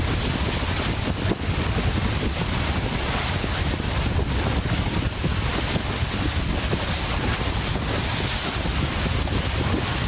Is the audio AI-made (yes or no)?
no